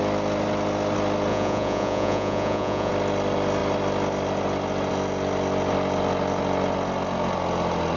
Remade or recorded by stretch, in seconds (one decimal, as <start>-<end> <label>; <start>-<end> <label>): 0.0-1.3 recorded; 1.3-2.9 remade; 2.9-8.0 recorded